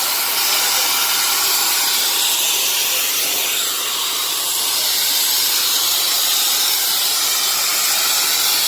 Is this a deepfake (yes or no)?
no